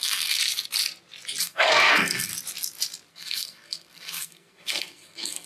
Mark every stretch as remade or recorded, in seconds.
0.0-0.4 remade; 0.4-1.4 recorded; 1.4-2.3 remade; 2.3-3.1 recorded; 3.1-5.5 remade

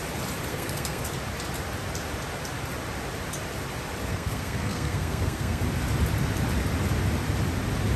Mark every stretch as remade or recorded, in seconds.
0.0-0.5 recorded; 0.5-1.0 remade; 1.0-4.1 recorded; 4.1-5.6 remade; 5.6-8.0 recorded

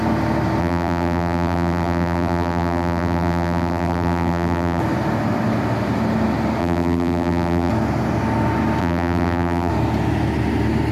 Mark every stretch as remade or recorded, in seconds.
0.0-0.6 recorded; 0.6-4.8 remade; 4.8-6.6 recorded; 6.6-7.7 remade; 7.7-8.8 recorded; 8.8-9.7 remade; 9.7-10.9 recorded

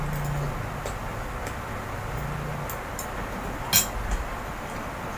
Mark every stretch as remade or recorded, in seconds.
0.0-5.2 recorded

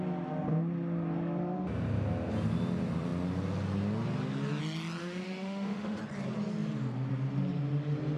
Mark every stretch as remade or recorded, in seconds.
0.0-5.0 recorded; 5.0-6.0 remade; 6.0-8.2 recorded

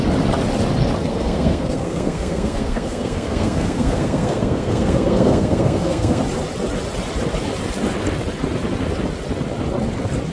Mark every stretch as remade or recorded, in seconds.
0.0-1.1 recorded; 1.1-6.2 remade; 6.2-10.3 recorded

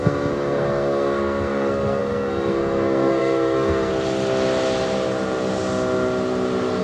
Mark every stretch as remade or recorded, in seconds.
0.0-3.9 remade; 3.9-6.8 recorded

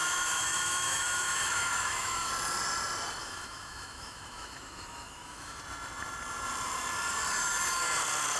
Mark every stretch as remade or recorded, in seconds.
0.0-2.3 remade; 2.3-3.2 recorded; 3.2-5.6 remade; 5.6-8.4 recorded